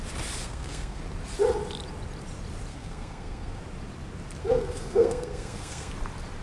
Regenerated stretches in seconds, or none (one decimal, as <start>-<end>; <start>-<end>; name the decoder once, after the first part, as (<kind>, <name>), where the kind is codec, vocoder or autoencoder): 0.4-1.0 (codec, SNAC); 2.7-3.6; 4.4-5.9